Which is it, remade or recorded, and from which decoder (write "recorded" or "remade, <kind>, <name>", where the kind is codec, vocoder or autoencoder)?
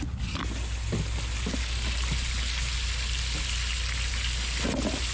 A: recorded